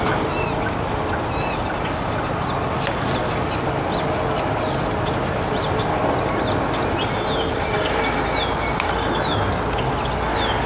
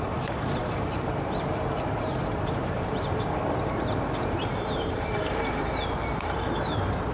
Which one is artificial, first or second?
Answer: second